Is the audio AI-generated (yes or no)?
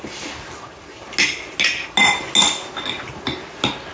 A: no